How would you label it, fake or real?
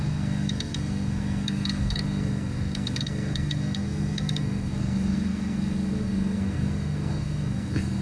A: fake